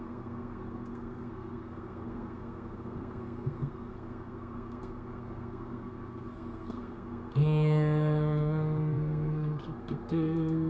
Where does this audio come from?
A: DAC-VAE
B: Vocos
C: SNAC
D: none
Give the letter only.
C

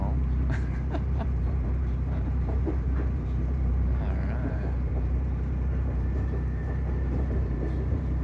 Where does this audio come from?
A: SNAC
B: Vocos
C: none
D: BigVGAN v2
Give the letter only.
D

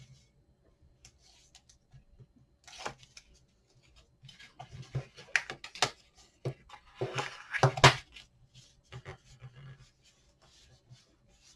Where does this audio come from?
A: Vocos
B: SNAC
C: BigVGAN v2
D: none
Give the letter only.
D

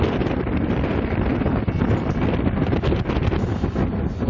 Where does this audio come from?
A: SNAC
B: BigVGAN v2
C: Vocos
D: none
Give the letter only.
D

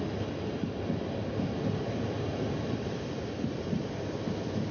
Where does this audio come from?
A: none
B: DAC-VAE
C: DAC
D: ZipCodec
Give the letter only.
A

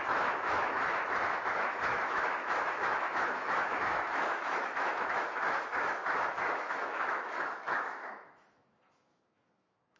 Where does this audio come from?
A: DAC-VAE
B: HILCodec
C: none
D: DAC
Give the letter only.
A